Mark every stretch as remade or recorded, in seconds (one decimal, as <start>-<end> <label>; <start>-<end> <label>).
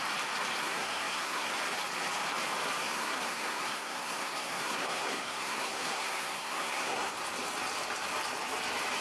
0.0-0.6 recorded; 0.6-1.5 remade; 1.5-2.8 recorded; 2.8-7.1 remade; 7.1-9.0 recorded